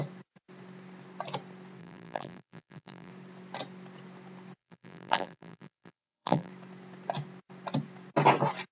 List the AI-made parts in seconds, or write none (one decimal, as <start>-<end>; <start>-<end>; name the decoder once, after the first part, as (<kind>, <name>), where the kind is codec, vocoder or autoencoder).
1.8-3.1 (vocoder, BigVGAN v2); 4.6-6.5